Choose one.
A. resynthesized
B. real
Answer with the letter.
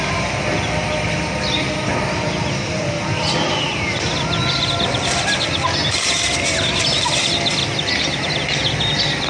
B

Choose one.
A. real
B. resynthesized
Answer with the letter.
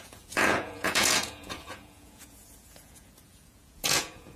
B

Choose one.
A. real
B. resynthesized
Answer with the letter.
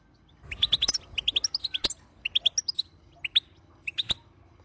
A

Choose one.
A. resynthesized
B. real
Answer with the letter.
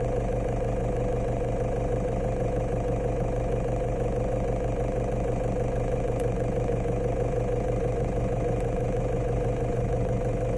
A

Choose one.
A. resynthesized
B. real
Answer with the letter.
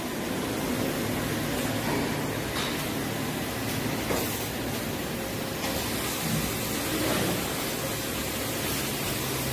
B